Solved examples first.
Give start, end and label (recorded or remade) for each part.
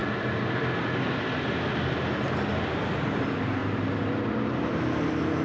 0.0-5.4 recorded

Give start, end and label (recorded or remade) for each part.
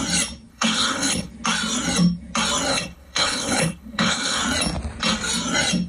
0.0-0.5 recorded; 0.5-1.3 remade; 1.3-2.7 recorded; 2.7-4.4 remade; 4.4-5.9 recorded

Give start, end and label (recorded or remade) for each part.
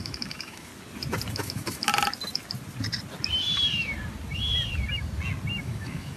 0.0-0.7 remade; 0.7-1.3 recorded; 1.3-1.9 remade; 1.9-5.6 recorded; 5.6-6.2 remade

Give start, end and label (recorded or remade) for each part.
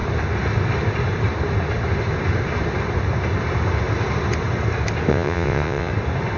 0.0-5.1 recorded; 5.1-5.9 remade; 5.9-6.4 recorded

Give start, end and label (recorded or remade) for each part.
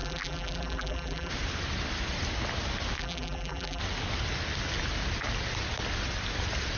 0.0-1.3 remade; 1.3-3.0 recorded; 3.0-3.8 remade; 3.8-6.8 recorded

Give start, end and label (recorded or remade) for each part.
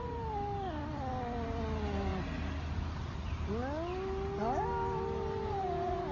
0.0-6.1 recorded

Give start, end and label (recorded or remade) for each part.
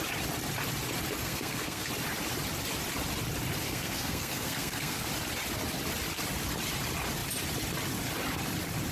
0.0-1.2 recorded; 1.2-1.9 remade; 1.9-3.6 recorded; 3.6-5.1 remade; 5.1-8.9 recorded